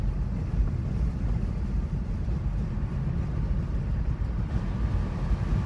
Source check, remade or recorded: recorded